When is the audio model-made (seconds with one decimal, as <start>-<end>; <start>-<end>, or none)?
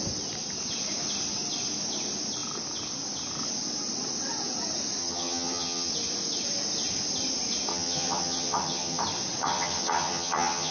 5.0-5.9; 7.7-9.0; 9.4-10.7